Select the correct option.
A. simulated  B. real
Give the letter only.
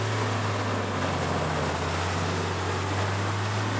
B